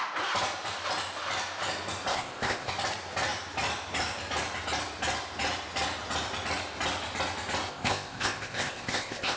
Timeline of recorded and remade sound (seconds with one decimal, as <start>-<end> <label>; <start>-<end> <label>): 0.0-2.1 recorded; 2.1-2.7 remade; 2.7-7.7 recorded; 7.7-9.4 remade